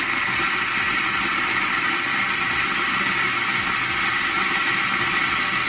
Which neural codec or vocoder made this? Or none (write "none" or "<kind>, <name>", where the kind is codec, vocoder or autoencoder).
none